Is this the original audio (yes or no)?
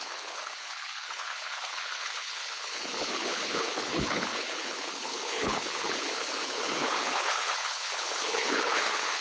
no